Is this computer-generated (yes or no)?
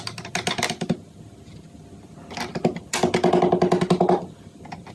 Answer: no